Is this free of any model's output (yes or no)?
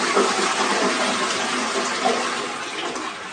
yes